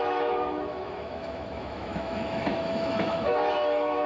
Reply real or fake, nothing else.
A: fake